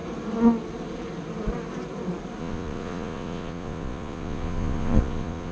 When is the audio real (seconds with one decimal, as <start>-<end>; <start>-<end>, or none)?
0.0-2.4